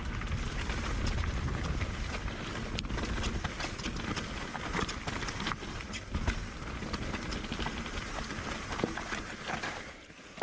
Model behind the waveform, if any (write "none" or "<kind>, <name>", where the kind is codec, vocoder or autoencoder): none